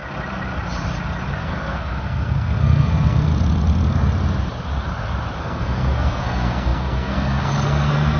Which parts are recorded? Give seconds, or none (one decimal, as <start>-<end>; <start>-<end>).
0.0-1.3; 3.3-5.4